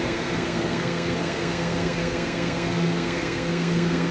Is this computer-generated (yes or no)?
yes